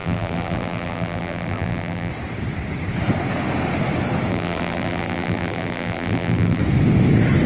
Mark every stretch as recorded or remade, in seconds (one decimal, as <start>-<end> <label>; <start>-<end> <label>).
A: 0.0-2.1 remade; 2.1-4.3 recorded; 4.3-6.6 remade; 6.6-7.5 recorded